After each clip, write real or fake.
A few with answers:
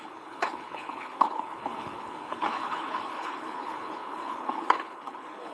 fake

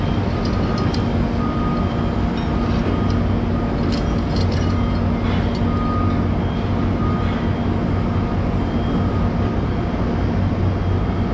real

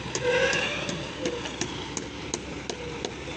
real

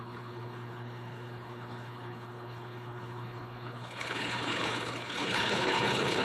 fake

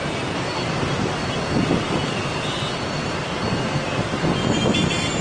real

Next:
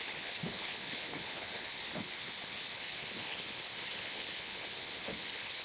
fake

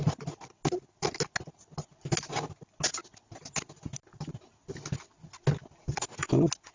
real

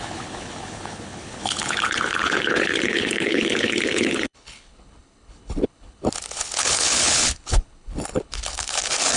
fake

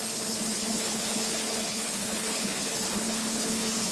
fake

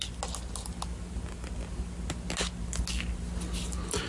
real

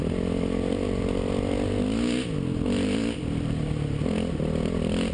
real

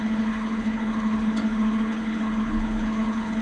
fake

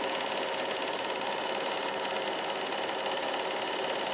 real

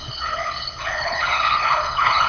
fake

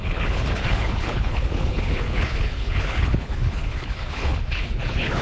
fake